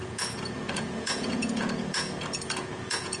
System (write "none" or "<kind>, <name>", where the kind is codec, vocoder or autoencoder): vocoder, Vocos